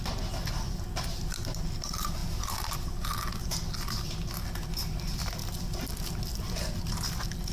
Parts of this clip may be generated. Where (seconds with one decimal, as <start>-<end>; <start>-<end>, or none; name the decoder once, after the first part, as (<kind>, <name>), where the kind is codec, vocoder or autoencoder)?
none